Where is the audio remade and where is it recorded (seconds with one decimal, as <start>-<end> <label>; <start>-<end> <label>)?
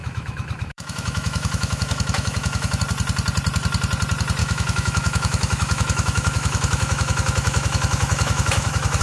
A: 0.0-2.8 remade; 2.8-4.4 recorded; 4.4-9.0 remade